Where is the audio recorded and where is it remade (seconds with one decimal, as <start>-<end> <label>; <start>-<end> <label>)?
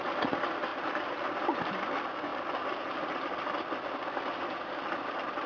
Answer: 0.0-0.7 recorded; 0.7-1.3 remade; 1.3-2.3 recorded; 2.3-5.5 remade